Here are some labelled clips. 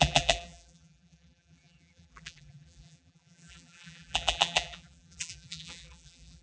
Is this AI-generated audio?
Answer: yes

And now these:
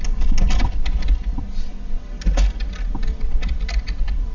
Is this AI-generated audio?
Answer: no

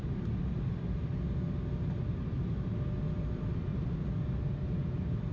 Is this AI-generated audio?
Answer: no